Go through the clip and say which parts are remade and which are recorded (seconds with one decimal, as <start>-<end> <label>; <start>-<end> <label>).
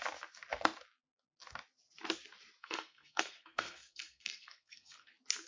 0.0-2.6 recorded; 2.6-5.1 remade; 5.1-5.5 recorded